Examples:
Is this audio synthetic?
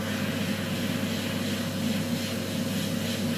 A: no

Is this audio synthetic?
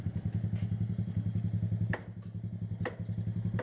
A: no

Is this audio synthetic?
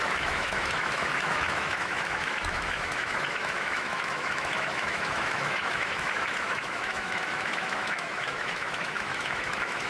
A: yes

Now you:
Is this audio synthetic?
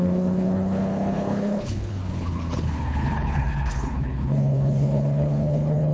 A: yes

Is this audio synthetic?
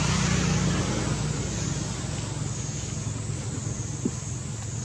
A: no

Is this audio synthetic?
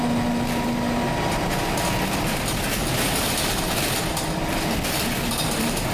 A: no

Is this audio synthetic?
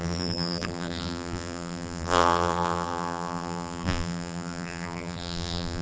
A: yes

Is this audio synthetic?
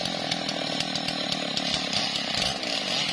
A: no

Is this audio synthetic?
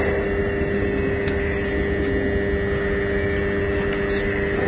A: no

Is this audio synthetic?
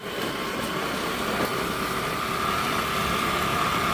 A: no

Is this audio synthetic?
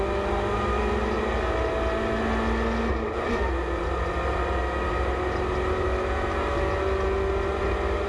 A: no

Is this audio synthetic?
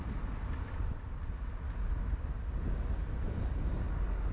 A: no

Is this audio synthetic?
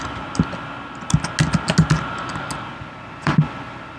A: no